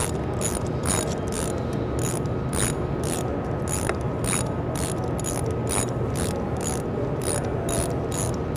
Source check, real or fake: real